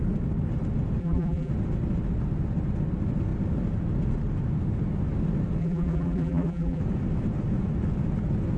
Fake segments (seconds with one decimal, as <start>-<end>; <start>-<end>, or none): 1.0-1.5; 5.6-6.8